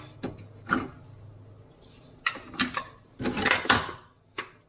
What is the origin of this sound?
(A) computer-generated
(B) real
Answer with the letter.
B